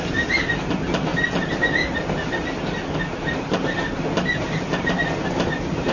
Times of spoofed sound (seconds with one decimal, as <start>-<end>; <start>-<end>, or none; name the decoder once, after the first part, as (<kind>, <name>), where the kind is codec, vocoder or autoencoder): none